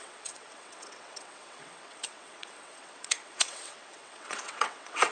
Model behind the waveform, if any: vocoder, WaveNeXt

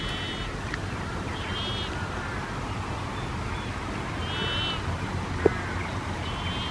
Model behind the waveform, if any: none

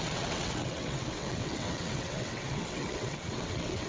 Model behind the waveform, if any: vocoder, WaveNeXt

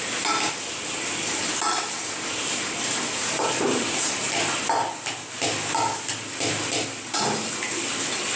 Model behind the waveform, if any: none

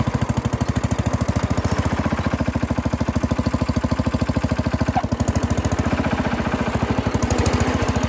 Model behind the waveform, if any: none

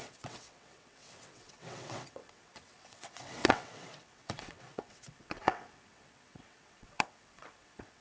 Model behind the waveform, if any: vocoder, WaveNeXt